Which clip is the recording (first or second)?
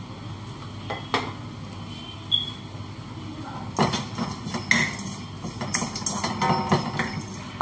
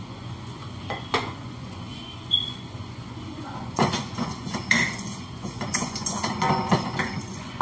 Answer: first